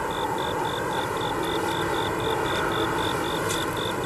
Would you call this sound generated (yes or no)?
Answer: no